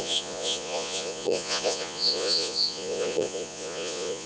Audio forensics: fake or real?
fake